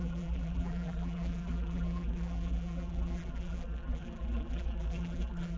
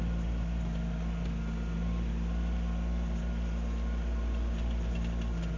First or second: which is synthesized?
first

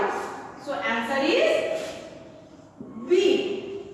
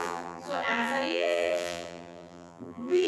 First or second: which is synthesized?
second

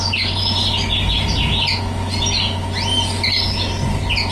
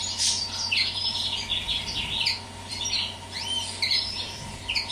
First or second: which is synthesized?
second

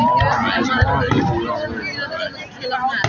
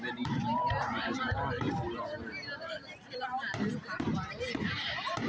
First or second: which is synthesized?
second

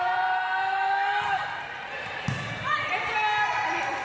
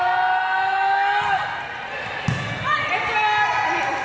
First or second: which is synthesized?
first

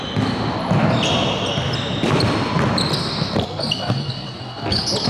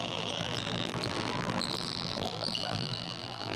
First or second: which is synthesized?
second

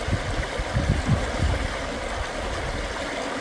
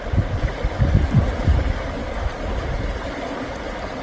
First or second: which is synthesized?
second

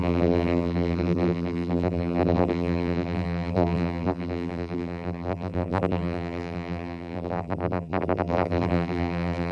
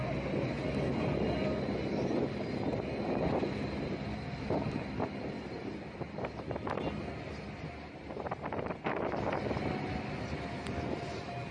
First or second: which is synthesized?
first